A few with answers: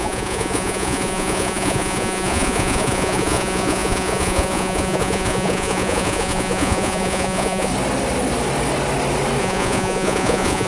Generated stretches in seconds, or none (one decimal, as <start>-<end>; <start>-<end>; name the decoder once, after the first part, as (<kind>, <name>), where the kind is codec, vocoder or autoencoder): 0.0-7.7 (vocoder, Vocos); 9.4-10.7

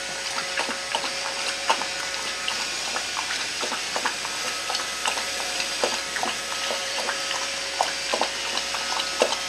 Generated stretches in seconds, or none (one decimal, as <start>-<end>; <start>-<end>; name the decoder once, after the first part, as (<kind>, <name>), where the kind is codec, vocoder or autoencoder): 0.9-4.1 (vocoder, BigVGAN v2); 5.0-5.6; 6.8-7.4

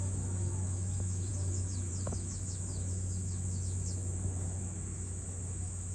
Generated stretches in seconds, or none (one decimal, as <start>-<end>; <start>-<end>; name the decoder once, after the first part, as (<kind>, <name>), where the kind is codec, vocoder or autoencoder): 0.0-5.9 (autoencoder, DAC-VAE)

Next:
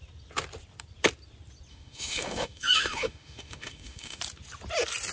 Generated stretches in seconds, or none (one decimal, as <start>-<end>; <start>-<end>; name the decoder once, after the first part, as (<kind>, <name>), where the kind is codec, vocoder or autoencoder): 1.7-4.2 (autoencoder, DAC-VAE)